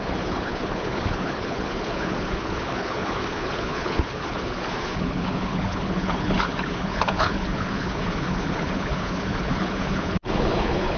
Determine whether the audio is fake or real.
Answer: fake